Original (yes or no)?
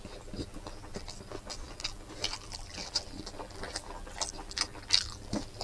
yes